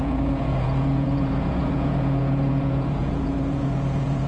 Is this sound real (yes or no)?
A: no